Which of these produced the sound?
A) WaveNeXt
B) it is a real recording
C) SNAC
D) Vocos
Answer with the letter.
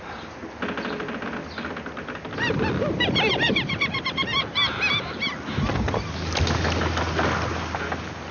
B